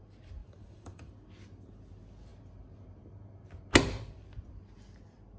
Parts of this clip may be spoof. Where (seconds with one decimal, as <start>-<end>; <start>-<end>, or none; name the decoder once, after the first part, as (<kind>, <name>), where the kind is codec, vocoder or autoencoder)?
0.4-1.1 (vocoder, BigVGAN v2)

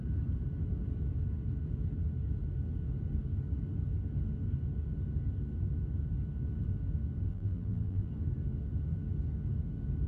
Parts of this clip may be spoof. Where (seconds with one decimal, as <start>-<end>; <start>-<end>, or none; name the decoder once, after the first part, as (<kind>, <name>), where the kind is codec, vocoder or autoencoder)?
7.3-8.1 (vocoder, BigVGAN v2)

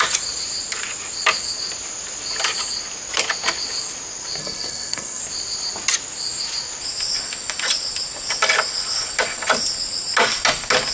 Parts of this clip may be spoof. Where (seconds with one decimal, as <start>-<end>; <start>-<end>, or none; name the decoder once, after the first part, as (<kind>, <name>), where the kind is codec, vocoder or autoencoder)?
4.4-5.2 (codec, SNAC)

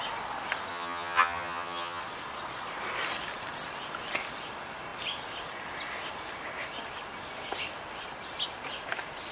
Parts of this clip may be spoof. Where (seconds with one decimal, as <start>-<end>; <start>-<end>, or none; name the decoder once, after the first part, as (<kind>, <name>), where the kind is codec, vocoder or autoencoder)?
0.7-2.0 (vocoder, HiFi-GAN)

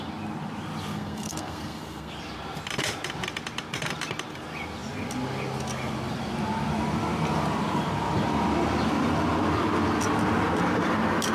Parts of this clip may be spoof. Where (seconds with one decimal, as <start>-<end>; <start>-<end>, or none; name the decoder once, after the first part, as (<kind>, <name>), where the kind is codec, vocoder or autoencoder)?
0.9-2.1 (codec, SNAC)